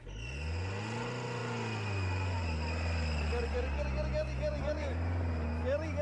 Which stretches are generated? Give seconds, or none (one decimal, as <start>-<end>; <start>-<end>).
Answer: none